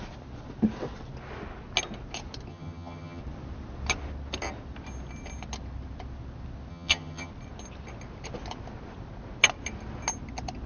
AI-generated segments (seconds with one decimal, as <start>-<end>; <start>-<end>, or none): 2.5-3.2; 6.7-7.3